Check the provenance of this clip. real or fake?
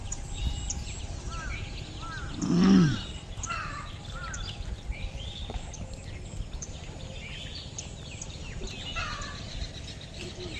real